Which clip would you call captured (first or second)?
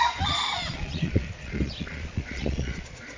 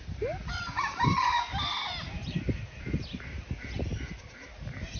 second